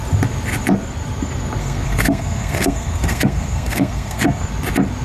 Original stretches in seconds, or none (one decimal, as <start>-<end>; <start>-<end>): 0.0-1.6; 4.4-5.0